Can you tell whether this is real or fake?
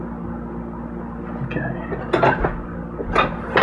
real